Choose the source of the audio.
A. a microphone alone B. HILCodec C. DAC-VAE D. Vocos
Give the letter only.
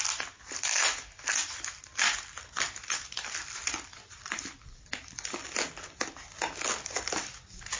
A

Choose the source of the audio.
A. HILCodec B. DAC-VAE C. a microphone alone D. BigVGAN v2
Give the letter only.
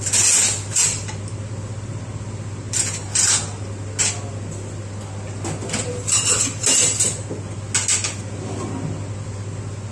C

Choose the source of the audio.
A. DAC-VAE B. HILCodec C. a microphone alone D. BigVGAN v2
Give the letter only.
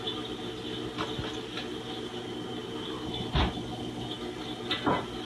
C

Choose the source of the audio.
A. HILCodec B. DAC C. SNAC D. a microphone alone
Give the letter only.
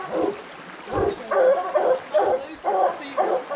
D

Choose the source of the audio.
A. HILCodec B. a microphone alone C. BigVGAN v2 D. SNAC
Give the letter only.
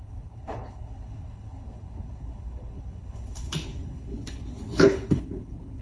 A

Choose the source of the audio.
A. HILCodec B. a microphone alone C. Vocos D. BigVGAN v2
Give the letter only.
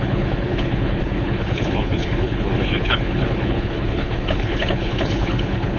A